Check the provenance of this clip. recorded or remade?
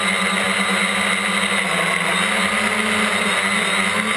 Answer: recorded